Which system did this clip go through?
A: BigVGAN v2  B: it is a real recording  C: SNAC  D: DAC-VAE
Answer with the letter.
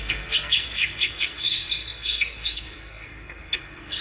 C